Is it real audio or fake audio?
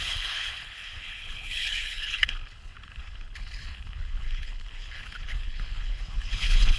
fake